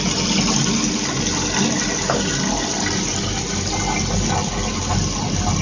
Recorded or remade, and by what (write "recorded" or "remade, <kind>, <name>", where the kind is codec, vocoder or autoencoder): recorded